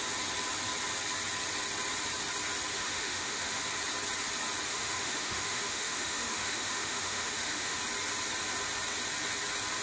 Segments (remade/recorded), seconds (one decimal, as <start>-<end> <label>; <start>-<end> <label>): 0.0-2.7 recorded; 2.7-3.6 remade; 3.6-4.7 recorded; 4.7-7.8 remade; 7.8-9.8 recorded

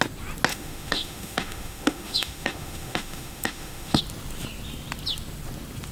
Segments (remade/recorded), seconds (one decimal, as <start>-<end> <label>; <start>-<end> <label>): 0.0-0.5 recorded; 0.5-4.0 remade; 4.0-5.9 recorded

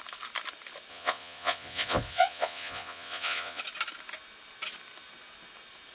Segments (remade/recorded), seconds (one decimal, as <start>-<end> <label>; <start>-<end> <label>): 0.0-0.9 recorded; 0.9-3.6 remade; 3.6-5.9 recorded